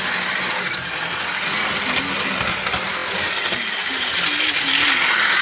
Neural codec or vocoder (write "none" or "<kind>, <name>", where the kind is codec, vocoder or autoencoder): none